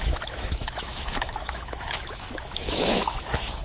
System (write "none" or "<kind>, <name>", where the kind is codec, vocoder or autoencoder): autoencoder, DAC-VAE